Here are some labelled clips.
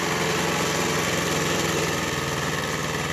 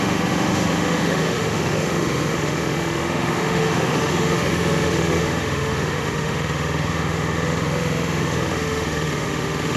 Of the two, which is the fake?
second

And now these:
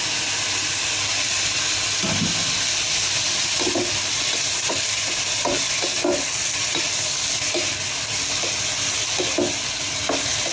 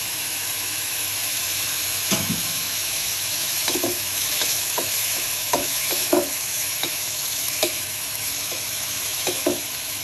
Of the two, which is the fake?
second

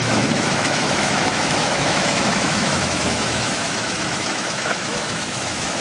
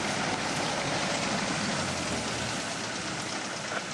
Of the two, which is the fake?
first